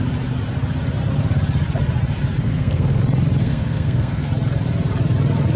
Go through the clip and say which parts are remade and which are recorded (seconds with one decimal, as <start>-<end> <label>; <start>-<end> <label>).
0.0-2.4 recorded; 2.4-3.0 remade; 3.0-3.4 recorded; 3.4-4.3 remade; 4.3-5.6 recorded